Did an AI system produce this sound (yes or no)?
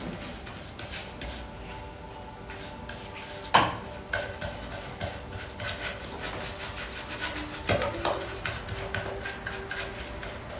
no